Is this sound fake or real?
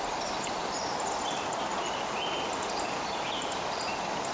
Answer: real